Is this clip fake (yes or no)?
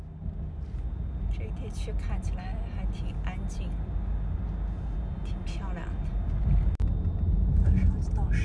no